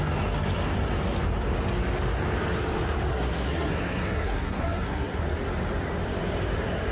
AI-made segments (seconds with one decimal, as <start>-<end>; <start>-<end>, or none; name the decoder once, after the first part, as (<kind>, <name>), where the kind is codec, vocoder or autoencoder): 3.1-5.2 (codec, SNAC)

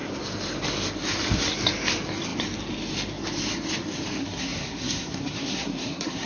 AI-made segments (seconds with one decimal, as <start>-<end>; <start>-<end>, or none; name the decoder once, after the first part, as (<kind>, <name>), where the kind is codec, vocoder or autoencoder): 4.2-6.3 (codec, SNAC)

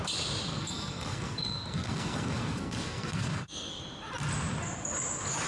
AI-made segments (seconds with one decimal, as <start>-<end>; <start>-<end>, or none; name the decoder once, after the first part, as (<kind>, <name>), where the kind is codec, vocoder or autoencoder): 0.5-3.8 (codec, SNAC)

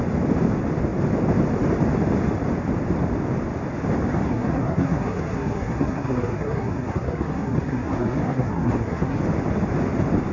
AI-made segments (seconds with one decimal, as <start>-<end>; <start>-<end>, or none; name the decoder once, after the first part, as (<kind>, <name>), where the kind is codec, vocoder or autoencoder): 4.1-9.2 (codec, SNAC)

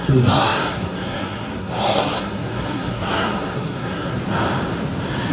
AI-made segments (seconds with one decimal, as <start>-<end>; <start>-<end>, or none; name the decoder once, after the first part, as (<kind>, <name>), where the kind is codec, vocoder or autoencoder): 0.0-4.2 (codec, SNAC)

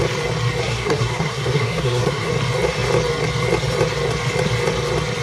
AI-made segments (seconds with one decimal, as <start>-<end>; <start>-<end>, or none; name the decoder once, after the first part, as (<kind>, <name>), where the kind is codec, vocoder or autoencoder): 0.6-2.3 (codec, SNAC)

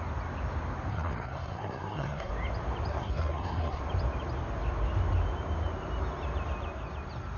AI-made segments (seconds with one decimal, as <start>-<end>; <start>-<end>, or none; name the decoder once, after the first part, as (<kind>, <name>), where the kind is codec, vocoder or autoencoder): 0.9-2.3 (codec, SNAC); 2.9-3.8

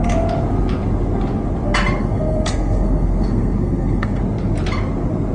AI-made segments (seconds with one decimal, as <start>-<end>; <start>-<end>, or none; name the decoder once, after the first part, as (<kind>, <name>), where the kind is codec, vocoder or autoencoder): 2.0-4.2 (codec, SNAC)